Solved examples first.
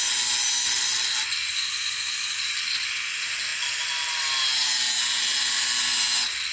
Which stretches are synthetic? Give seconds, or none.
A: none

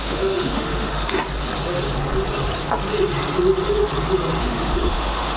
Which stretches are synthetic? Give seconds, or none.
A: 0.0-1.2 (autoencoder, DAC-VAE); 4.4-5.4

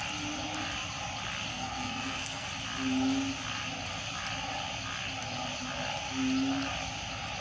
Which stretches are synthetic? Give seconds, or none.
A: 1.5-2.5 (codec, SNAC)